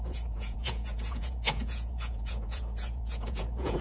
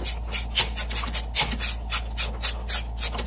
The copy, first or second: first